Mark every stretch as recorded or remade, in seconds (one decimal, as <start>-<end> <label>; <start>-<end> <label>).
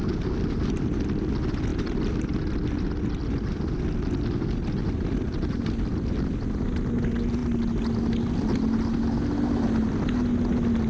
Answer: 0.0-1.7 recorded; 1.7-2.5 remade; 2.5-10.9 recorded